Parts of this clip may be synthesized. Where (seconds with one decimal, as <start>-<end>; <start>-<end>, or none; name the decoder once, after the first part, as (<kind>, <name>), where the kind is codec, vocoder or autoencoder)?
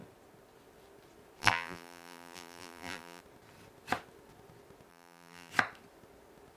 1.4-3.2 (vocoder, BigVGAN v2); 4.9-5.5